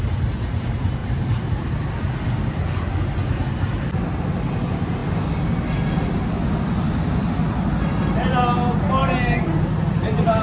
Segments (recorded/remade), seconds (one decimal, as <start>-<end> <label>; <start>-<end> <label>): 0.0-10.4 recorded